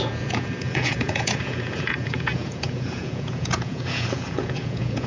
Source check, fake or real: fake